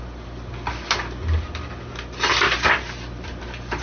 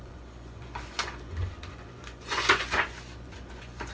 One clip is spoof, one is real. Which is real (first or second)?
first